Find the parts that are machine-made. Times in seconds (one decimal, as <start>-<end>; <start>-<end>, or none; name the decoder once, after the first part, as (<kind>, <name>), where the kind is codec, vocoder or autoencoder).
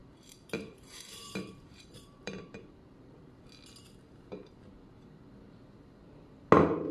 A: 0.0-3.4 (vocoder, BigVGAN v2)